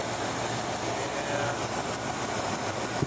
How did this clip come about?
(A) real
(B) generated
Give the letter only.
A